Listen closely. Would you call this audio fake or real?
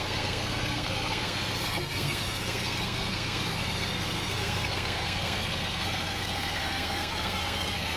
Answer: fake